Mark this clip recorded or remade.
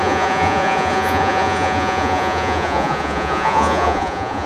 remade